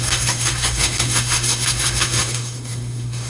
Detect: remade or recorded remade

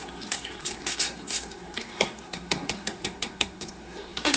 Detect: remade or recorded remade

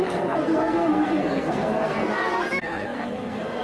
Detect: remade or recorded remade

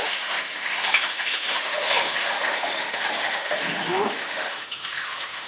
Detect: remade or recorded remade